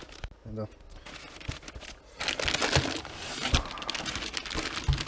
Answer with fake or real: real